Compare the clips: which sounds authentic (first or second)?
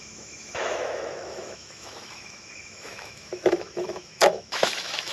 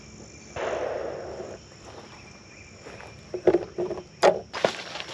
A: second